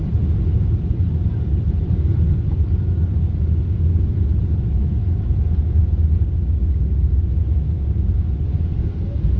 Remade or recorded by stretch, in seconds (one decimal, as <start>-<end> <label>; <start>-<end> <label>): 0.0-5.8 recorded; 5.8-8.1 remade; 8.1-9.4 recorded